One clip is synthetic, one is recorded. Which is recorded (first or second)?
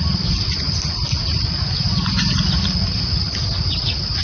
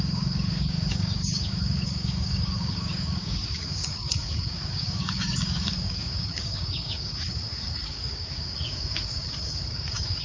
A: first